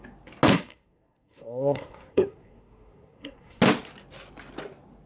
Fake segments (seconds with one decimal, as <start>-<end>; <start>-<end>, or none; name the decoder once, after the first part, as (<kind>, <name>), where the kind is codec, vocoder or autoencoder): 0.5-3.6 (codec, SNAC)